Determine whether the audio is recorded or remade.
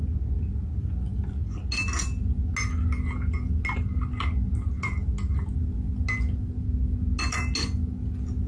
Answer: recorded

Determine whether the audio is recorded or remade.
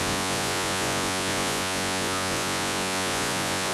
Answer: remade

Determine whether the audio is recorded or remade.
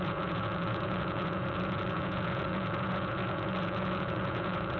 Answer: remade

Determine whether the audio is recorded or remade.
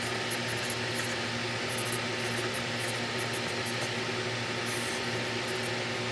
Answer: recorded